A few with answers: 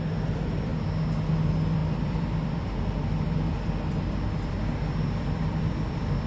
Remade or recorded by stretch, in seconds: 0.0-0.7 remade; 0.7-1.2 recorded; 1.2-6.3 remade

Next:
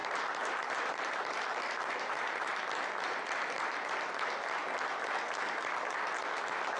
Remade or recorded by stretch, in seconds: 0.0-2.6 remade; 2.6-6.8 recorded